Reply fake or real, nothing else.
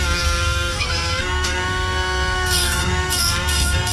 fake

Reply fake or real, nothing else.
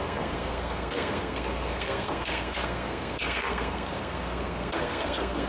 fake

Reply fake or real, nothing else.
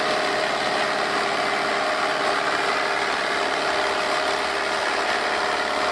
real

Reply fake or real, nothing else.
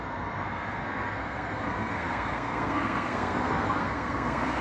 fake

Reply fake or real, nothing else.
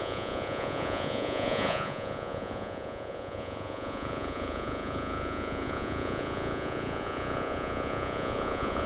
fake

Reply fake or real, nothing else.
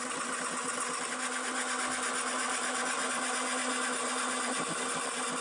real